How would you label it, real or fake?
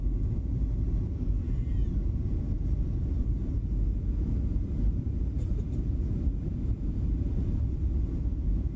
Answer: fake